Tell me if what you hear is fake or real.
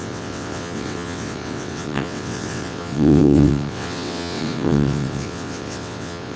fake